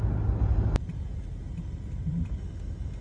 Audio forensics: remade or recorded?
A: recorded